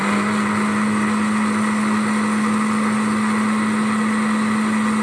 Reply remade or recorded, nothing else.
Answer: recorded